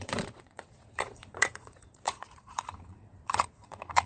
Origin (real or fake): fake